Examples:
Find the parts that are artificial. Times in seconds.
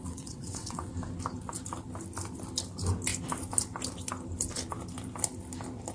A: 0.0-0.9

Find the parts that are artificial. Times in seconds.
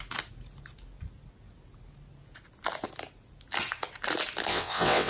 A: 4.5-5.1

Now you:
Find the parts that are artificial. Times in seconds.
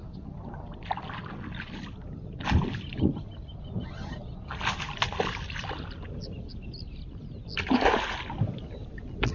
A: none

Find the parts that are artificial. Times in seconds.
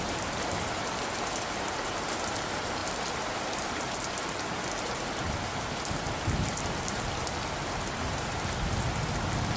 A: none